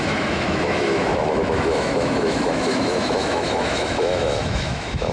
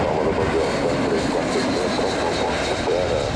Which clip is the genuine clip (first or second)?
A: second